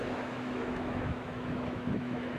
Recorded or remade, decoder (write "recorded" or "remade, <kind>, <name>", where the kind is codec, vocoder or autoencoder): remade, autoencoder, DAC-VAE